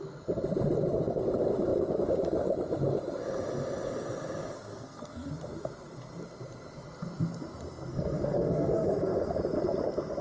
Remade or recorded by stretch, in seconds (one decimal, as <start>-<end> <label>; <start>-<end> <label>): 0.0-4.7 recorded; 4.7-5.3 remade; 5.3-7.9 recorded; 7.9-9.3 remade; 9.3-10.2 recorded